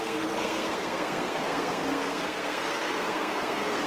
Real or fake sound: fake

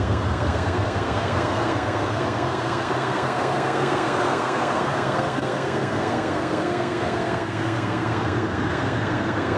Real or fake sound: fake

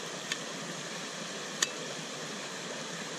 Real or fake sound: real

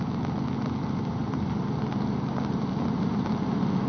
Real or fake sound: real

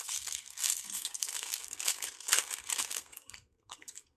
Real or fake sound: fake